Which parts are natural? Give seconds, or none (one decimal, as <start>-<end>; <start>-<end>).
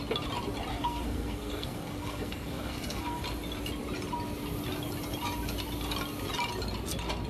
0.0-0.7; 3.2-7.3